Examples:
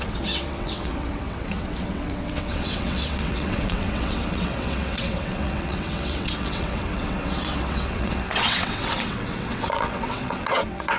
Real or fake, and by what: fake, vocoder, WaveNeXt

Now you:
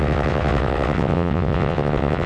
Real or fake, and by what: fake, vocoder, WaveNeXt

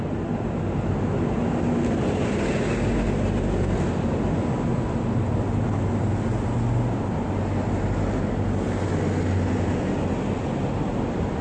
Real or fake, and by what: real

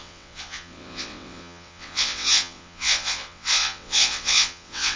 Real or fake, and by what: fake, vocoder, WaveNeXt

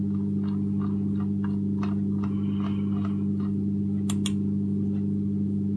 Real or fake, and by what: real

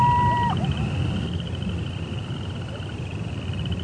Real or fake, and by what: real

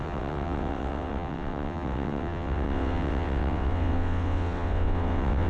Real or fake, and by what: fake, vocoder, WaveNeXt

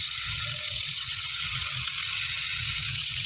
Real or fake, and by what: fake, vocoder, WaveNeXt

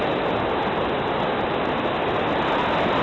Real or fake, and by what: real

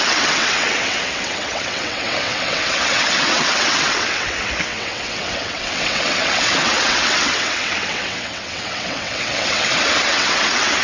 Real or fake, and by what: fake, vocoder, WaveNeXt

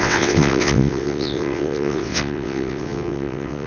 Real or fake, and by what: fake, vocoder, WaveNeXt